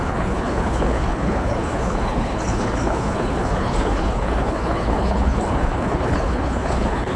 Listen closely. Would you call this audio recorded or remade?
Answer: remade